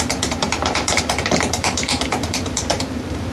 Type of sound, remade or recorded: remade